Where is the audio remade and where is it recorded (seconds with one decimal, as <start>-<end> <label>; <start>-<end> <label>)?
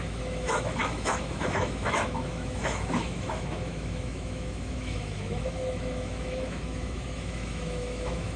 0.0-8.4 remade